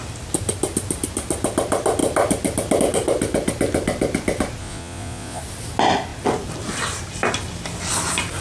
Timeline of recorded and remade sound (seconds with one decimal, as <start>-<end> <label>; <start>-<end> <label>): 0.0-4.6 recorded; 4.6-5.4 remade; 5.4-8.4 recorded